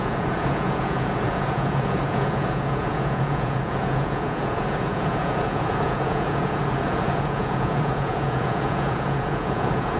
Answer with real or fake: fake